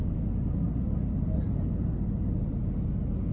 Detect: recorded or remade recorded